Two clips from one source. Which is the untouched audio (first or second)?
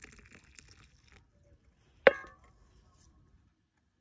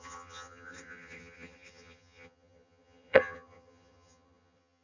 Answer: first